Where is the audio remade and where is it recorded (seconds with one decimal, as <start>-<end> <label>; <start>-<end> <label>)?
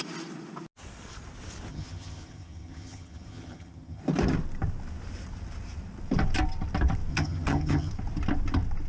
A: 0.0-1.7 recorded; 1.7-4.0 remade; 4.0-7.1 recorded; 7.1-7.9 remade; 7.9-8.9 recorded